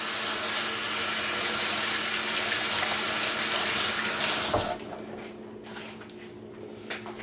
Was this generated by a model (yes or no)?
no